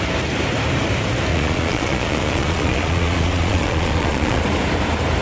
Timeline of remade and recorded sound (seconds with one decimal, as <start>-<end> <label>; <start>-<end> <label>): 0.0-1.3 recorded; 1.3-4.4 remade; 4.4-5.2 recorded